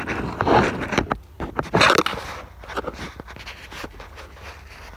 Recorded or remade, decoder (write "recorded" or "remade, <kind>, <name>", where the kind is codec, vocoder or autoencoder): recorded